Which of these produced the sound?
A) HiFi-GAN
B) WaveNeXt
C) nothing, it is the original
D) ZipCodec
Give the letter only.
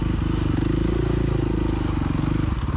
C